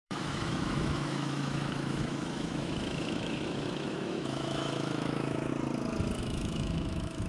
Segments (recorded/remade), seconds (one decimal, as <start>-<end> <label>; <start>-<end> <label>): 0.0-5.5 remade; 5.5-6.2 recorded; 6.2-7.3 remade